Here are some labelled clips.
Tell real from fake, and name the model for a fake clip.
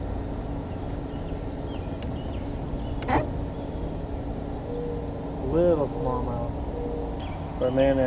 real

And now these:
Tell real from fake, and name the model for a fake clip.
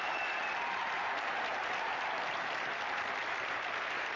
fake, vocoder, BigVGAN v2